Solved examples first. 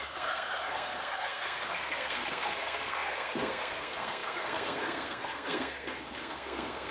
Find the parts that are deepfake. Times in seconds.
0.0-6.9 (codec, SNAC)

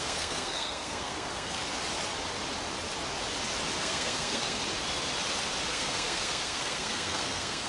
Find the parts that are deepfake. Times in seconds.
0.0-1.6 (codec, SNAC); 3.8-4.6; 5.7-7.7

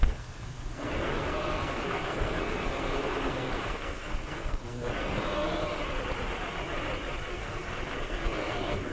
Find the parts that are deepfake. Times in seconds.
0.0-5.6 (codec, SNAC); 7.3-8.9

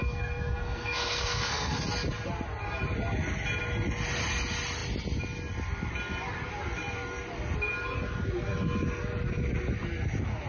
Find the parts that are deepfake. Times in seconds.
0.0-1.8 (codec, SNAC)

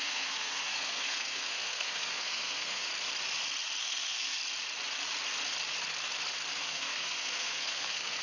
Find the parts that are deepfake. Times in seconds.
0.0-2.9 (codec, SNAC); 3.8-4.4; 6.6-8.2

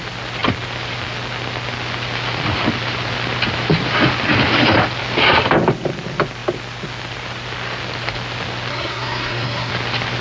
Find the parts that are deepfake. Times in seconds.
8.7-9.7 (codec, SNAC)